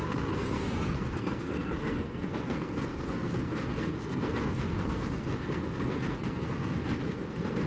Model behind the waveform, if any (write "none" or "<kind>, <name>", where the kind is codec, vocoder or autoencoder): codec, SNAC